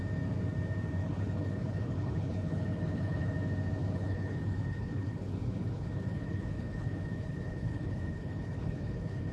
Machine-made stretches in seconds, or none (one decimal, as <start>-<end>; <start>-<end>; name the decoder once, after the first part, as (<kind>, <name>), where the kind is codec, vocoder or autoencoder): 1.0-3.3 (codec, HILCodec); 3.8-9.3